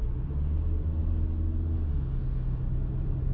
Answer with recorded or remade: recorded